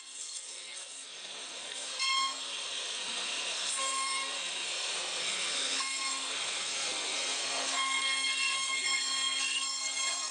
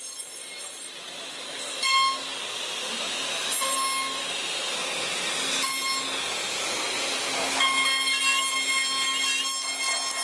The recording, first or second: second